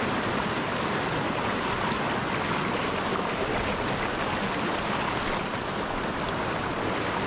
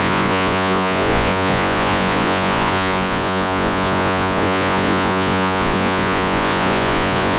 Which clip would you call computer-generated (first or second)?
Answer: second